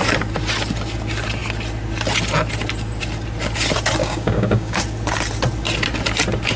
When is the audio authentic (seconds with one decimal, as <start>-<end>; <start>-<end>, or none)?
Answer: 0.0-4.0; 4.8-6.6